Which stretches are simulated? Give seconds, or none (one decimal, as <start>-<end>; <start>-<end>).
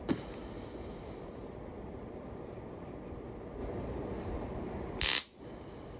3.6-5.0